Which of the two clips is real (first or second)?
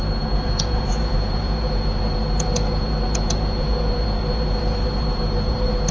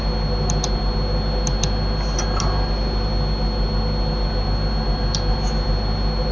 second